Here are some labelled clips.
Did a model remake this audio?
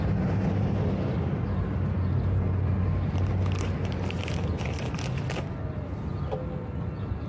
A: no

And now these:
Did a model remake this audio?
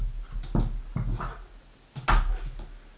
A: no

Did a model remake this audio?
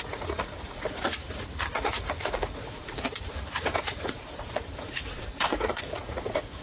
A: yes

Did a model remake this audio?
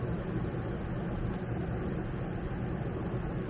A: no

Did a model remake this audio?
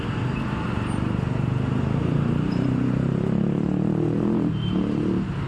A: yes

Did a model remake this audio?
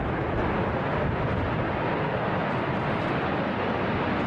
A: no